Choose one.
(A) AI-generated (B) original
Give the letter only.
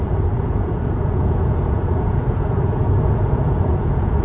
A